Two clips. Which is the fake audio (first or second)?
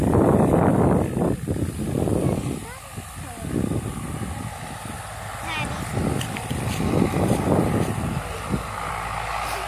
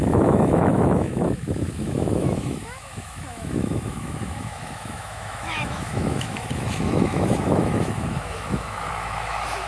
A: second